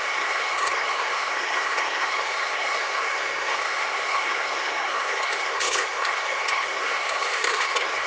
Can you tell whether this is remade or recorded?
remade